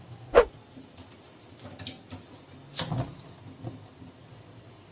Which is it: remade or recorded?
recorded